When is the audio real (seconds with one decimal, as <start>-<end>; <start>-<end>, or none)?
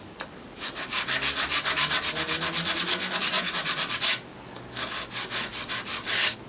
0.0-2.9; 3.5-6.5